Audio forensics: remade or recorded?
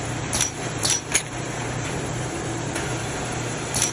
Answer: remade